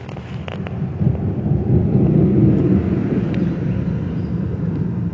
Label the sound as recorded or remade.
recorded